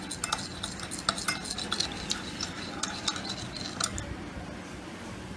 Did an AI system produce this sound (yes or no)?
no